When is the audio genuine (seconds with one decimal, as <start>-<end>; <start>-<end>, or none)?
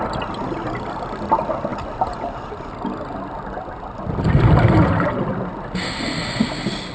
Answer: 0.0-1.7; 2.7-6.9